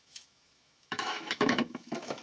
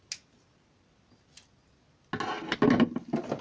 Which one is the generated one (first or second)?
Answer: first